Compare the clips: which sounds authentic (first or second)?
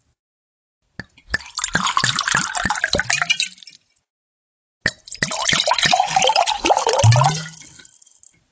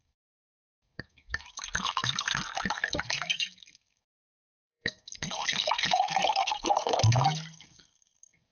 first